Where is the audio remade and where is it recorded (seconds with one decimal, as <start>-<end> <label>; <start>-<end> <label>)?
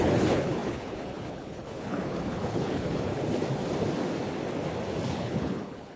0.0-3.1 remade; 3.1-5.1 recorded; 5.1-6.0 remade